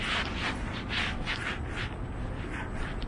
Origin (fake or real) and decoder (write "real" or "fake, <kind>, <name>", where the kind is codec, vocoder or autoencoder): real